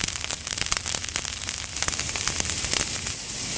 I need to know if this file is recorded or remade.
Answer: remade